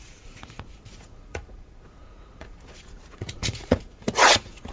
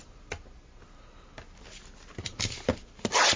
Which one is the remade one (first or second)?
first